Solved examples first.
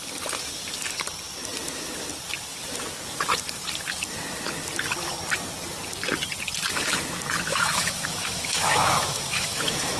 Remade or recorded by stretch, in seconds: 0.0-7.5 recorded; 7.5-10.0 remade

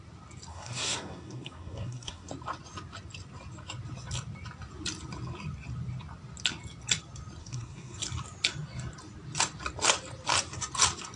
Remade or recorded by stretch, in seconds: 0.0-0.5 recorded; 0.5-2.3 remade; 2.3-7.4 recorded; 7.4-8.0 remade; 8.0-11.2 recorded

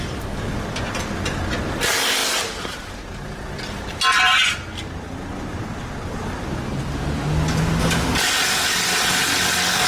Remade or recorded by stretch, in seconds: 0.0-2.2 recorded; 2.2-3.2 remade; 3.2-9.9 recorded

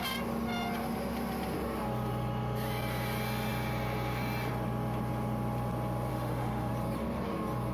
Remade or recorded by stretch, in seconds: 0.0-6.1 recorded; 6.1-6.7 remade; 6.7-7.7 recorded

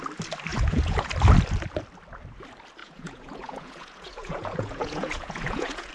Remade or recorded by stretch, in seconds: 0.0-0.5 recorded; 0.5-1.1 remade; 1.1-2.8 recorded; 2.8-5.9 remade

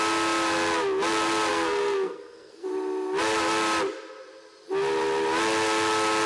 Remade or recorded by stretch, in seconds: 0.0-1.5 recorded; 1.5-2.7 remade; 2.7-6.3 recorded

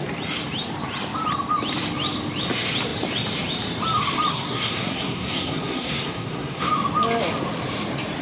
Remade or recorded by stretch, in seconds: 0.0-4.3 recorded; 4.3-6.7 remade; 6.7-8.2 recorded